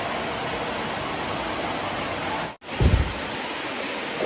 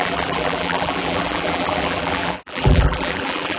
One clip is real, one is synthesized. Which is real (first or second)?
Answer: first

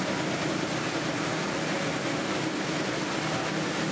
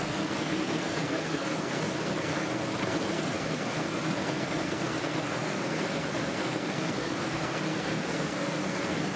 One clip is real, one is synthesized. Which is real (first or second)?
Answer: first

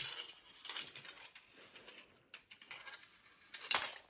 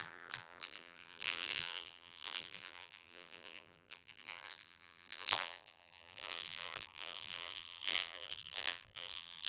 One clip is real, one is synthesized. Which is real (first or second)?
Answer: first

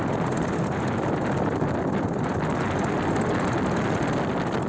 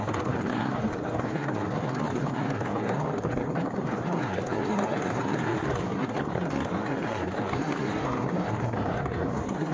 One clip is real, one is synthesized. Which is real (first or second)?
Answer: first